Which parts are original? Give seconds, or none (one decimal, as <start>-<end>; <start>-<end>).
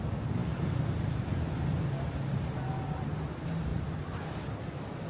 0.0-5.1